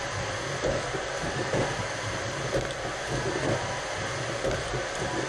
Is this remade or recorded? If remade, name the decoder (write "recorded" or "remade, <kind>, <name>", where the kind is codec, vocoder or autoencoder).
recorded